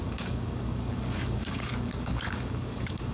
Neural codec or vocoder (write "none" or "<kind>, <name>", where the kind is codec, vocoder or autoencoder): codec, DAC